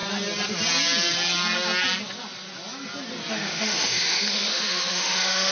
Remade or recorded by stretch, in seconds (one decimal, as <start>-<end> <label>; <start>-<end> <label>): 0.0-3.3 recorded; 3.3-5.5 remade

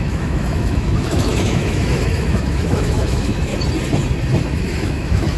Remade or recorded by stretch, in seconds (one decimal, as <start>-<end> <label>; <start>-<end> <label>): 0.0-3.5 remade; 3.5-4.5 recorded; 4.5-5.4 remade

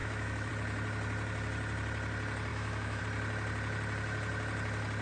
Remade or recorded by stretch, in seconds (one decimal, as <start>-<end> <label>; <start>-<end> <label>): 0.0-0.5 remade; 0.5-2.5 recorded; 2.5-3.0 remade; 3.0-5.0 recorded

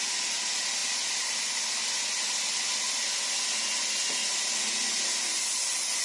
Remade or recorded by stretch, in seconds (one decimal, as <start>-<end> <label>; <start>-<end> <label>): 0.0-6.0 recorded

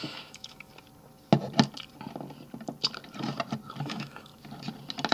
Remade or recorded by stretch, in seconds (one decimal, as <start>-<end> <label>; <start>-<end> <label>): 0.0-0.7 remade; 0.7-3.8 recorded; 3.8-4.3 remade; 4.3-5.1 recorded

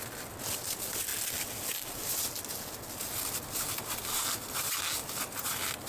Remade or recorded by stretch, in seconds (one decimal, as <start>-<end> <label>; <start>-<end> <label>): 0.0-5.9 recorded

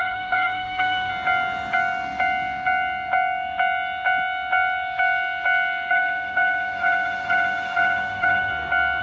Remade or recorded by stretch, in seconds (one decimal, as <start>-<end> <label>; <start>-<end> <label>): 0.0-1.1 remade; 1.1-5.9 recorded; 5.9-8.5 remade; 8.5-9.0 recorded